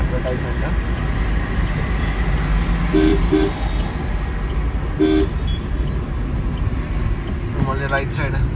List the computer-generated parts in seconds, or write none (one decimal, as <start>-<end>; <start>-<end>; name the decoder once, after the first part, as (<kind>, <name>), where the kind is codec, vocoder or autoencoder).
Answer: none